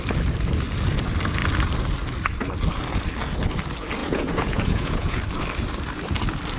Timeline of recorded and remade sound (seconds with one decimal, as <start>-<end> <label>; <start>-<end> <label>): 0.0-4.0 recorded; 4.0-5.2 remade; 5.2-6.6 recorded